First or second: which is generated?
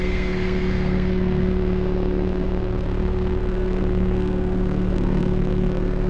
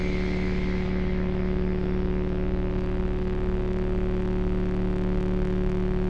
first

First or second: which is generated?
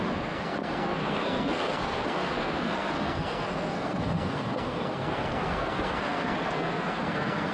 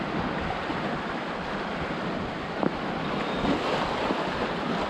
first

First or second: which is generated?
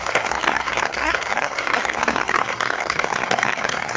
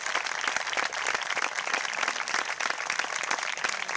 first